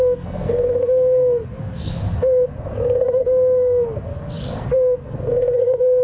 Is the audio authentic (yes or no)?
no